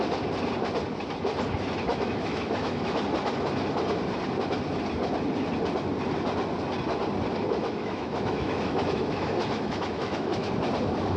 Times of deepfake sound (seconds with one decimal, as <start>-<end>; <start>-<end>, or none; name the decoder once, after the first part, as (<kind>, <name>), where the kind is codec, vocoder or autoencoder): 1.9-3.0 (autoencoder, DAC-VAE); 7.6-10.5